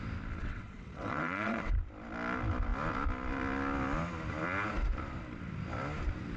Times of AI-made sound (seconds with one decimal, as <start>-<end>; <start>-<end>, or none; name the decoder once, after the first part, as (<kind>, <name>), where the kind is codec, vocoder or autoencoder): 0.4-1.7 (vocoder, WaveNeXt)